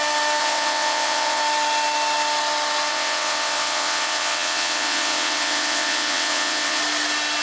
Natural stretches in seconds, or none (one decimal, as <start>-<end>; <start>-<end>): 0.0-0.4; 1.4-2.9; 6.8-7.4